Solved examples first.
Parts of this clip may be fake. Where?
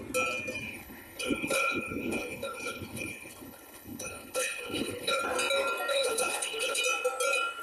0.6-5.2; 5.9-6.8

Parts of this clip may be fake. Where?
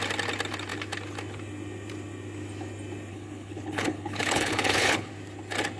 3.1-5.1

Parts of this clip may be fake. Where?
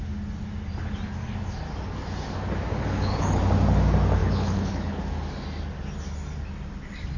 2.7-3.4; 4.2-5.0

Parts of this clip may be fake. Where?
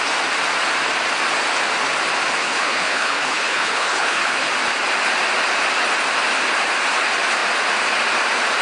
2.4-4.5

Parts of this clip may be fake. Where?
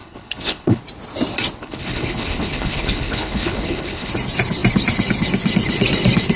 0.0-0.8; 1.6-4.1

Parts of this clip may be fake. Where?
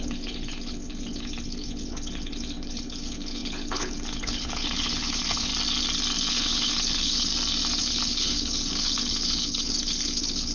0.0-5.5; 6.3-7.3; 7.8-10.5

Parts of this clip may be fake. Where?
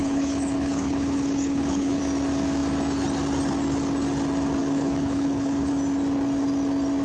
0.0-2.0; 4.6-5.7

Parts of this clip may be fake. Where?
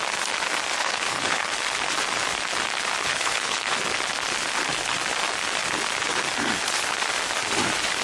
0.8-1.5; 3.0-3.7